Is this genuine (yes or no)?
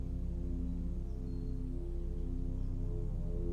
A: yes